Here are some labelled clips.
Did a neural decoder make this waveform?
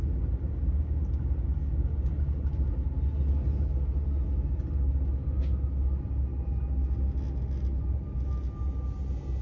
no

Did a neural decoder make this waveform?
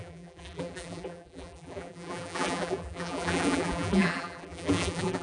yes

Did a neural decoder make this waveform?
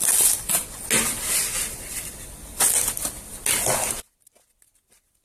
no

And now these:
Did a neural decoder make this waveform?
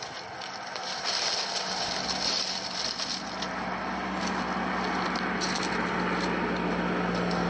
no